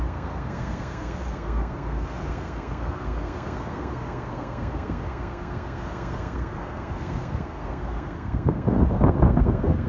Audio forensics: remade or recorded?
remade